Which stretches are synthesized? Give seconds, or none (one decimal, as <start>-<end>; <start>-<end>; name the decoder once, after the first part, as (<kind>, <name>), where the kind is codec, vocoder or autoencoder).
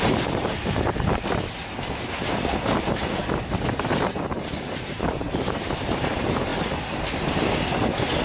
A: 0.0-6.5 (vocoder, BigVGAN v2); 7.0-8.2